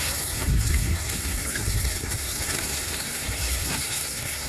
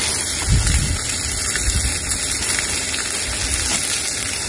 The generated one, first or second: first